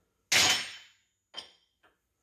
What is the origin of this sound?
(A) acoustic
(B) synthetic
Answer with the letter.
A